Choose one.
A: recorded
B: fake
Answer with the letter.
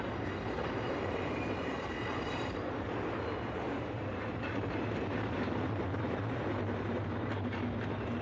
B